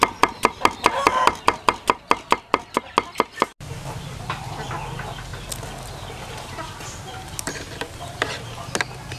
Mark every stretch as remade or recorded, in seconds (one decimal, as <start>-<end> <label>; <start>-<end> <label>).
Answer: 0.0-9.2 recorded